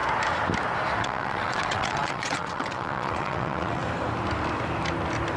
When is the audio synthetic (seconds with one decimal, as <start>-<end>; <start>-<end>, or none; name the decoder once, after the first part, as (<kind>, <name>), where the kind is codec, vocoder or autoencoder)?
1.0-3.8 (vocoder, WaveNeXt)